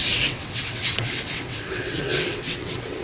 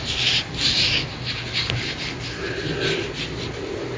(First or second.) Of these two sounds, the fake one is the first